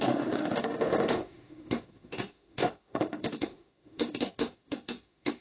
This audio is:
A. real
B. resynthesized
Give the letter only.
B